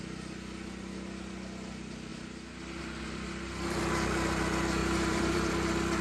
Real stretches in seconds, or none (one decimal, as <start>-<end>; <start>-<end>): 0.0-4.8; 5.5-6.0

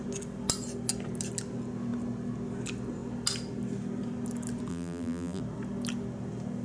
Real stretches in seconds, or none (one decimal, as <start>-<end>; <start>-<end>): 0.0-4.7; 5.4-6.6